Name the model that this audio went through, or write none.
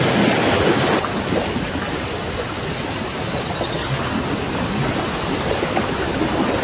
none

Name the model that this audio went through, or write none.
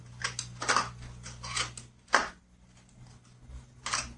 none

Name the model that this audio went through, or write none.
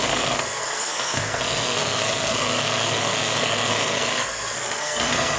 codec, SNAC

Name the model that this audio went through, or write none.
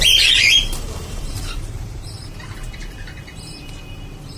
vocoder, BigVGAN v2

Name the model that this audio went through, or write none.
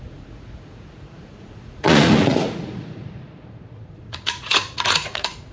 vocoder, Vocos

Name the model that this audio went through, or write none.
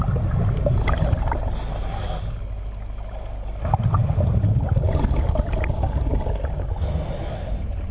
none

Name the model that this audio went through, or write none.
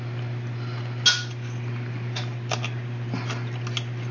none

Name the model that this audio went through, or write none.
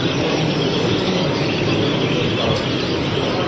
none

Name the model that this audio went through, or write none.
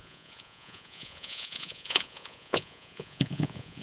vocoder, Vocos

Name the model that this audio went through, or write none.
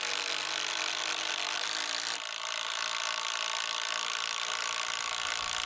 vocoder, BigVGAN v2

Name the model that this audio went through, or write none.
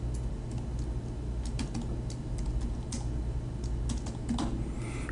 none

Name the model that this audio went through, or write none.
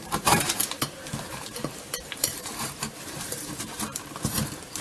vocoder, BigVGAN v2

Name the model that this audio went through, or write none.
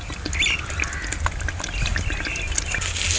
none